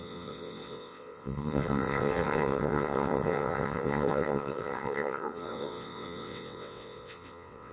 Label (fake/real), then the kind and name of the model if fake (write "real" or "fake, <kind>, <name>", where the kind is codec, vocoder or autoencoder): fake, vocoder, WaveNeXt